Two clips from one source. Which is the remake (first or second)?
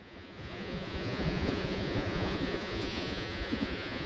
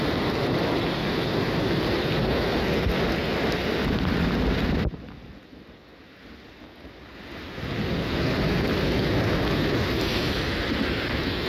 first